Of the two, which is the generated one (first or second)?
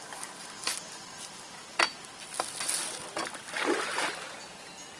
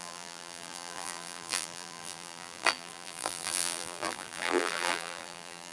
second